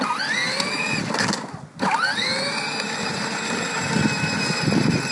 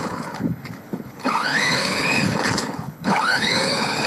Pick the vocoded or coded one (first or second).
second